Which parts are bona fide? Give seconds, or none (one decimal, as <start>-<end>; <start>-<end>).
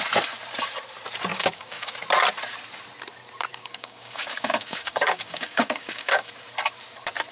0.0-1.3; 1.9-3.5; 6.3-7.3